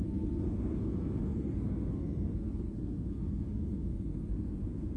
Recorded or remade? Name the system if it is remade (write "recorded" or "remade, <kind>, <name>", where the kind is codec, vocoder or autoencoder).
remade, codec, SNAC